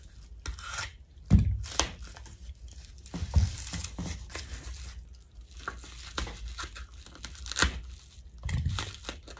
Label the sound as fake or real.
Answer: real